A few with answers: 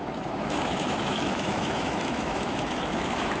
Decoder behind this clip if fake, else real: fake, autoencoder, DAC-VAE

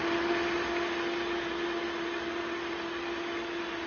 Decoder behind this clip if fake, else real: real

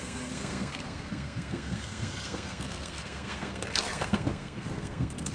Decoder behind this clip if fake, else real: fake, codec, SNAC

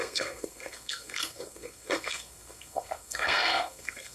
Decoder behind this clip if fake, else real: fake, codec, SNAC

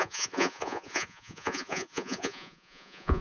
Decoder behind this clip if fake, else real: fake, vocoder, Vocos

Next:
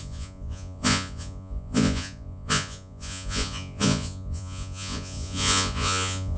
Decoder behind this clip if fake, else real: fake, vocoder, Vocos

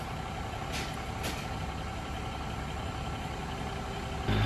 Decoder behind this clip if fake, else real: real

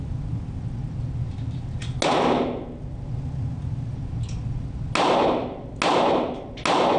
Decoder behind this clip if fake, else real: real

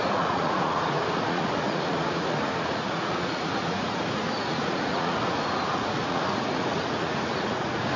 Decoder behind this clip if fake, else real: fake, vocoder, Vocos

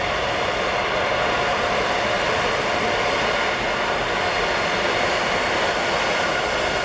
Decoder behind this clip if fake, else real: real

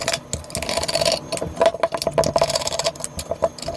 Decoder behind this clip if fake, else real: real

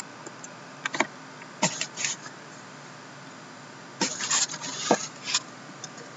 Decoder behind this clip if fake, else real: fake, vocoder, BigVGAN v2